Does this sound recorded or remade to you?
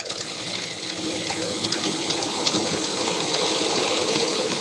remade